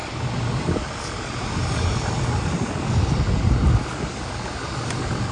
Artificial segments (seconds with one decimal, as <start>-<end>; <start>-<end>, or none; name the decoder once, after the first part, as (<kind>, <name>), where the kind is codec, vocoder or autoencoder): none